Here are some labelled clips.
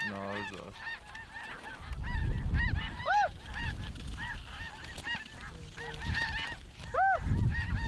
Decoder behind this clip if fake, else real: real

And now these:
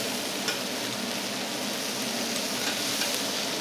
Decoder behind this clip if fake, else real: real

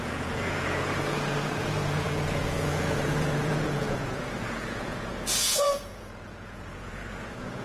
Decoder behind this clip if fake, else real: fake, vocoder, Vocos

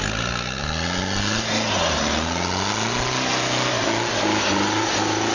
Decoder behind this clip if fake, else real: real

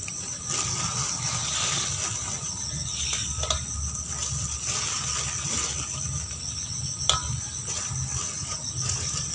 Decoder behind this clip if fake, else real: real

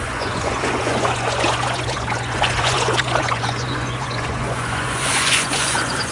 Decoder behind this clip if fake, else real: fake, vocoder, Vocos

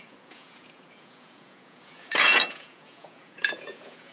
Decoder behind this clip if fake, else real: fake, vocoder, Vocos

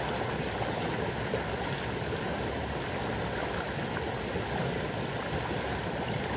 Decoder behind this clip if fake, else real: real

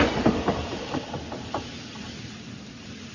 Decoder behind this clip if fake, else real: real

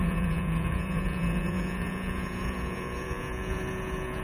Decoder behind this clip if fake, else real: fake, vocoder, Vocos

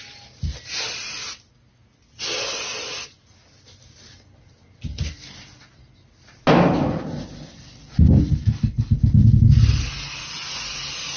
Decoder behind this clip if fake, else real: real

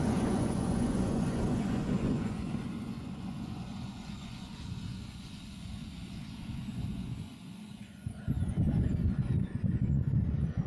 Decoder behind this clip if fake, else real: fake, vocoder, Vocos